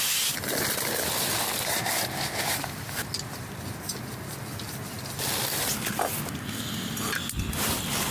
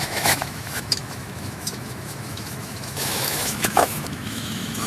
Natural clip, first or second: first